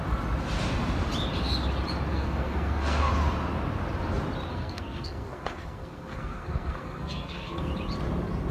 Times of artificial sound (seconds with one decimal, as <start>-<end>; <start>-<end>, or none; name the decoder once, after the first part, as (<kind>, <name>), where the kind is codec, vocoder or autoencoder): 2.1-3.1 (codec, SNAC); 4.5-7.7